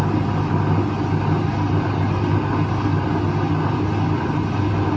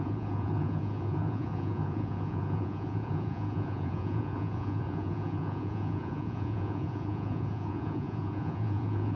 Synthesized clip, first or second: second